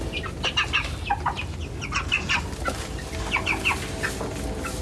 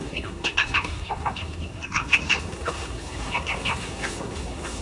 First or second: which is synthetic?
second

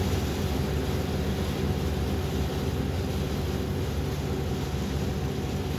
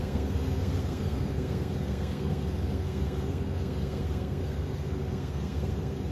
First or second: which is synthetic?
second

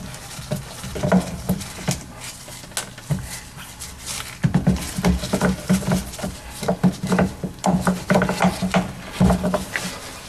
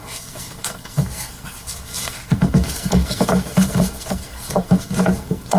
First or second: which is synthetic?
second